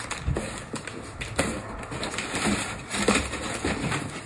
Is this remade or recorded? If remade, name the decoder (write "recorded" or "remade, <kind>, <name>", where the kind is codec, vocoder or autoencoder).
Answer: recorded